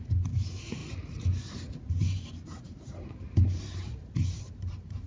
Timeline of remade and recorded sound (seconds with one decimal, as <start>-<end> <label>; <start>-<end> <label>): 0.0-0.8 remade; 0.8-1.9 recorded; 1.9-5.1 remade